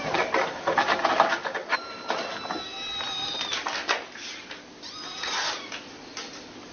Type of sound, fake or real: real